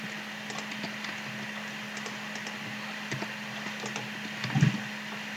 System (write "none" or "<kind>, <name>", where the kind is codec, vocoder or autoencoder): none